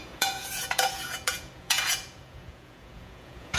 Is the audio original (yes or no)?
no